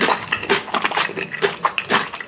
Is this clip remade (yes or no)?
no